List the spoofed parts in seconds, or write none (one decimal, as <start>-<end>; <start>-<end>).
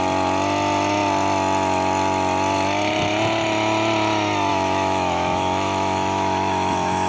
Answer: 4.5-7.1